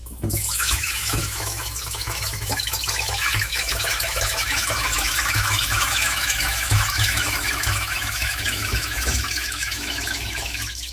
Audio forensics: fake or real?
fake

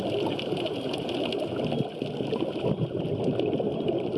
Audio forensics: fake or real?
real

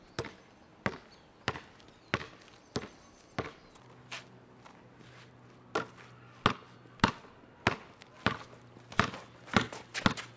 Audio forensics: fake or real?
real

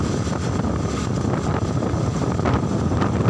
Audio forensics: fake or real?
real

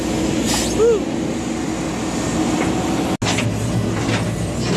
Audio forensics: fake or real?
real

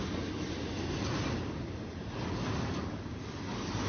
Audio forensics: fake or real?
real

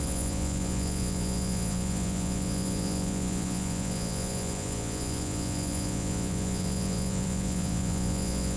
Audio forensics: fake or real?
fake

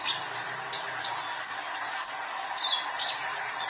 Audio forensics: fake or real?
real